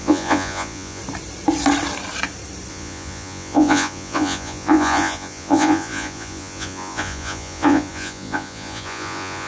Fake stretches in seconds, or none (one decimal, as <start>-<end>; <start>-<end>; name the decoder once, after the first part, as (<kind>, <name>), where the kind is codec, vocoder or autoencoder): 0.0-1.0 (vocoder, Vocos); 2.7-9.5